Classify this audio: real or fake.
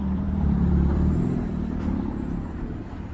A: fake